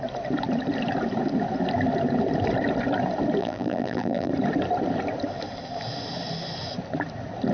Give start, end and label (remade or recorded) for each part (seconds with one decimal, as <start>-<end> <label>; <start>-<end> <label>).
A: 0.0-3.4 recorded; 3.4-4.3 remade; 4.3-7.5 recorded